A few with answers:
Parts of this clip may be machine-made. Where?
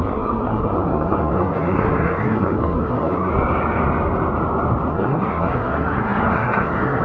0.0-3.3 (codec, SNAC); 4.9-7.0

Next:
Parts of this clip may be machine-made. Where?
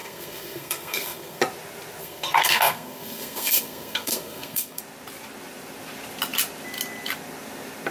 0.0-1.4 (codec, SNAC); 2.0-4.8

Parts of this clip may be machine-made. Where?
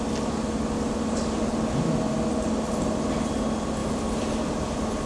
none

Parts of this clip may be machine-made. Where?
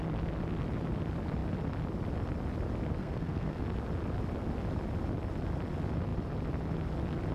3.0-3.6 (codec, SNAC)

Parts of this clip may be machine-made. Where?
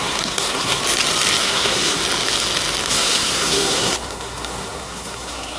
0.0-0.8 (codec, SNAC); 1.4-2.0; 2.9-5.6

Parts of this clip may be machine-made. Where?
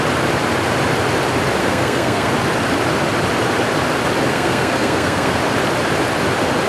1.6-2.3 (codec, SNAC); 4.3-5.4